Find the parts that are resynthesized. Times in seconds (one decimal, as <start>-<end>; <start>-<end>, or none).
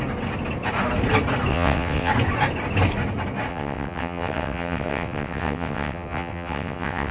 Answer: 1.5-2.1; 3.5-7.1